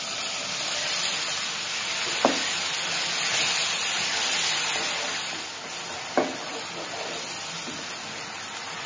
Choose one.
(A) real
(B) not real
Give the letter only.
A